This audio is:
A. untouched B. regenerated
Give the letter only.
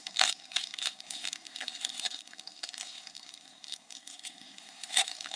B